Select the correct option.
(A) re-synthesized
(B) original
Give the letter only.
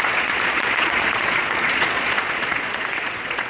A